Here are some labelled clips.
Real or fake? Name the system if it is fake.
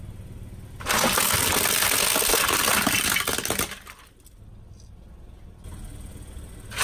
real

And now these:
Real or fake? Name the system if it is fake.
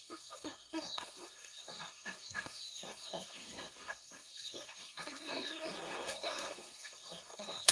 fake, codec, SNAC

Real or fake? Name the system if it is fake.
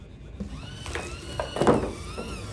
real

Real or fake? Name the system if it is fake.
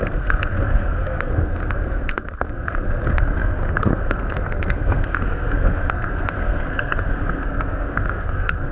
fake, codec, SNAC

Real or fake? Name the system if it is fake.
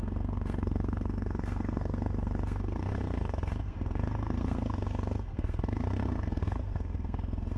fake, codec, SNAC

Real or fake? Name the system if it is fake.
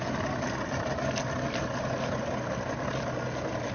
real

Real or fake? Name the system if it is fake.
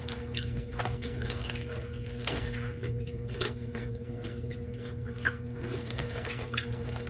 fake, codec, SNAC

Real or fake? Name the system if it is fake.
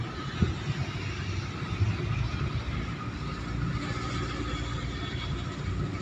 real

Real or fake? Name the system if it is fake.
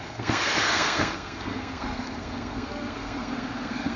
fake, codec, SNAC